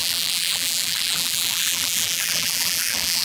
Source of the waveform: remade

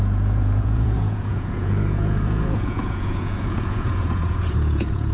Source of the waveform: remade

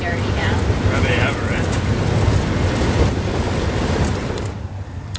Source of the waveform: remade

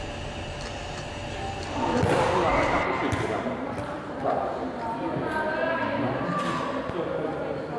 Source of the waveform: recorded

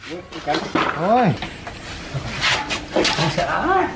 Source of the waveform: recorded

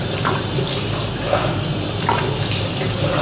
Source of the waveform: recorded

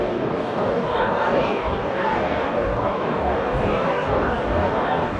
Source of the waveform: remade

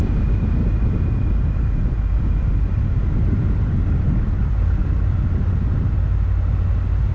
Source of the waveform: recorded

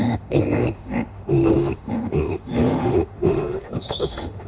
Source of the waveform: remade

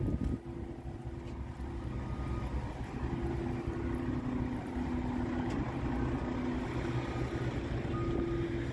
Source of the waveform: recorded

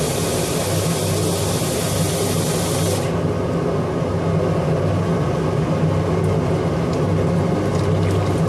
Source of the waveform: recorded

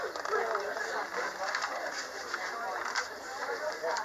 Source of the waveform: recorded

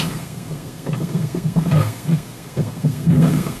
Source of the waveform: remade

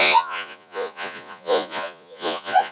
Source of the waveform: remade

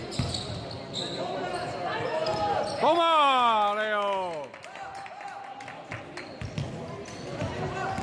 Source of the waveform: recorded